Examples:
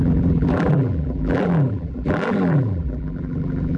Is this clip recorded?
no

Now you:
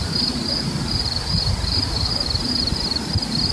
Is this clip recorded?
no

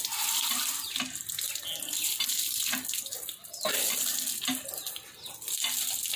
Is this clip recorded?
yes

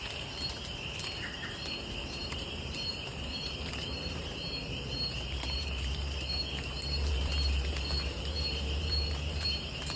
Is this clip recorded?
no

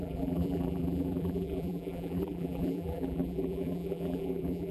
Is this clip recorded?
no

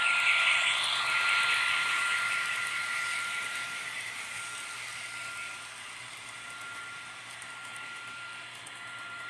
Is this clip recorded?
no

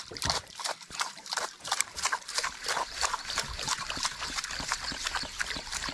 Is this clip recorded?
no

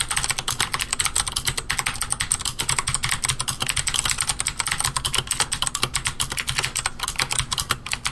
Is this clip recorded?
yes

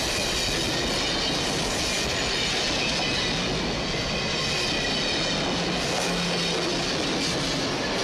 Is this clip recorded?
yes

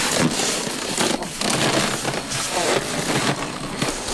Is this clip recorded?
yes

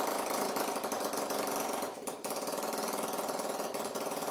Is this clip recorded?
no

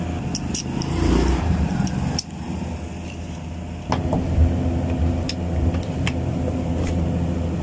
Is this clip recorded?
yes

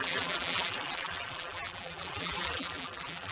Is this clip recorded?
no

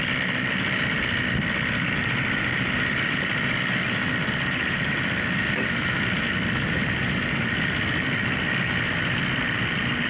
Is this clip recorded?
yes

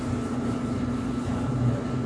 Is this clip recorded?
no